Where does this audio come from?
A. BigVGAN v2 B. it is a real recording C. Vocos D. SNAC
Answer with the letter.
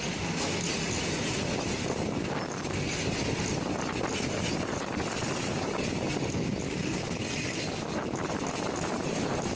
B